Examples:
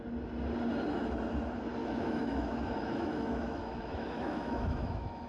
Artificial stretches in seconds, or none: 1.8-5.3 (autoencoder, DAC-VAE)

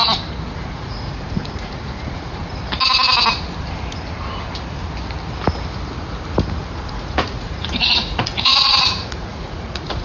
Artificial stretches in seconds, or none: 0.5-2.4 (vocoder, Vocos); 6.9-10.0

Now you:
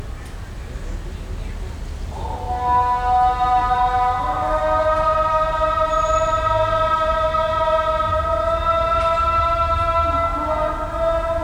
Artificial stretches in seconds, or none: 10.3-11.4 (vocoder, BigVGAN v2)